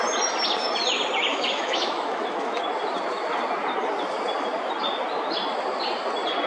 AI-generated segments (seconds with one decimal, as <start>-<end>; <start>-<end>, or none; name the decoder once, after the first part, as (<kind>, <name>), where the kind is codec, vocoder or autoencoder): 1.3-2.6 (autoencoder, DAC-VAE)